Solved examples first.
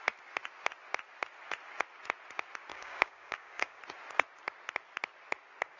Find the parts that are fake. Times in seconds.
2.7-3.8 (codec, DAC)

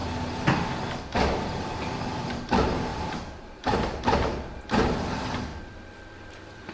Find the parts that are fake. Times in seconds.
1.3-6.7 (vocoder, BigVGAN v2)

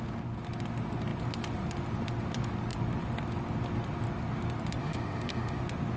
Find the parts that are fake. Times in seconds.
4.8-5.6 (autoencoder, DAC-VAE)

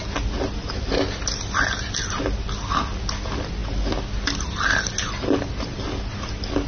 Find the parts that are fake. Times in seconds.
none

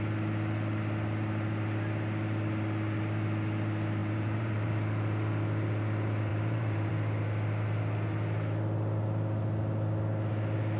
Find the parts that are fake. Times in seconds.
4.0-4.7 (vocoder, BigVGAN v2); 6.3-6.9

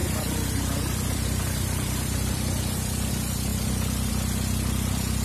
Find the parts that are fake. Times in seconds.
0.0-3.1 (vocoder, BigVGAN v2); 3.5-4.1

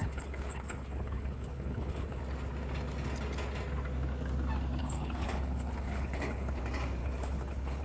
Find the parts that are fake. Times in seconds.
0.0-2.2 (codec, HILCodec); 4.8-6.6; 7.0-7.8

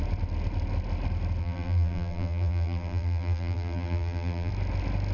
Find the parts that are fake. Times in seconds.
1.4-4.5 (vocoder, BigVGAN v2)